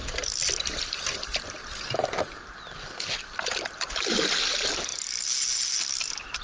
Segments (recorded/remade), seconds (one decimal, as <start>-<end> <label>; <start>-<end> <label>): 0.0-3.8 remade; 3.8-4.9 recorded; 4.9-5.9 remade; 5.9-6.4 recorded